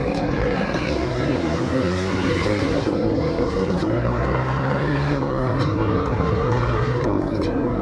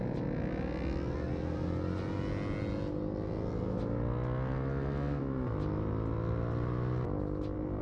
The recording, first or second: second